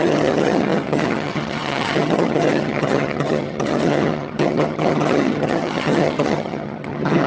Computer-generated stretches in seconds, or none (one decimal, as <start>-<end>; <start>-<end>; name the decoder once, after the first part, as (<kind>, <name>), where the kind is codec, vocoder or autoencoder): 0.0-7.3 (vocoder, HiFi-GAN)

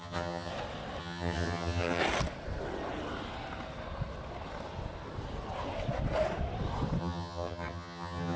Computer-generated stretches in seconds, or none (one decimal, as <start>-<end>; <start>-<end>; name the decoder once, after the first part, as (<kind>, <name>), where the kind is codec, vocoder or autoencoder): 0.0-0.5 (vocoder, HiFi-GAN); 1.0-2.0; 7.0-8.4